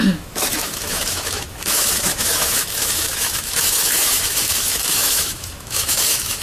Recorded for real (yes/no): no